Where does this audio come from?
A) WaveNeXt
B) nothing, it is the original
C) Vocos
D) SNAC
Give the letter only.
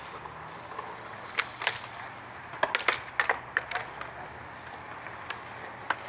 B